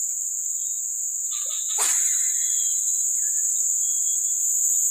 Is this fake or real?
real